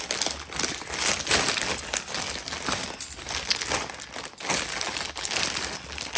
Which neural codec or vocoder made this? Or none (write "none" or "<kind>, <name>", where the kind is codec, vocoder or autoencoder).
none